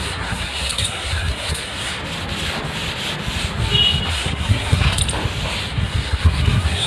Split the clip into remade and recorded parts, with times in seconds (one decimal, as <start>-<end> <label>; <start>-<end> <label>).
0.0-2.0 remade; 2.0-4.1 recorded; 4.1-5.0 remade; 5.0-5.7 recorded; 5.7-6.9 remade